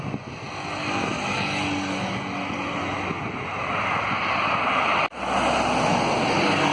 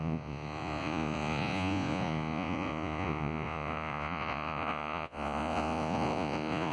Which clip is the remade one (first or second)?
second